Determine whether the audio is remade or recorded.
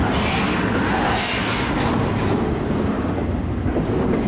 recorded